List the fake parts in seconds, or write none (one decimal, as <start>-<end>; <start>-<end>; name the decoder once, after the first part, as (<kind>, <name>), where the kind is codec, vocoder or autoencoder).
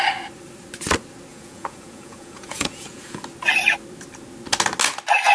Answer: 1.3-3.2 (vocoder, Vocos)